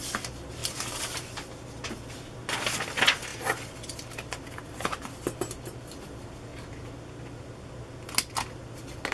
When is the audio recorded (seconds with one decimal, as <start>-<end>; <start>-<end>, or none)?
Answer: 0.0-9.1